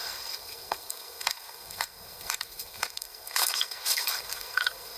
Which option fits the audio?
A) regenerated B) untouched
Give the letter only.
A